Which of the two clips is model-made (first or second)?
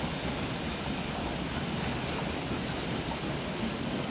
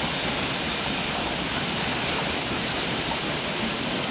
second